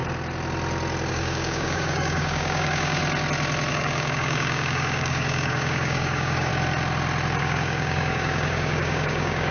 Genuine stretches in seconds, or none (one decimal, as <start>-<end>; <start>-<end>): 0.0-1.1; 3.0-3.7; 6.5-7.4